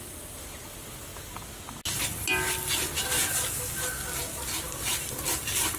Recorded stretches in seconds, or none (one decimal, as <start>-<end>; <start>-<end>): 0.0-5.8